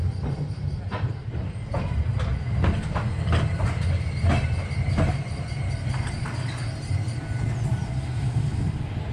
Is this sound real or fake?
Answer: real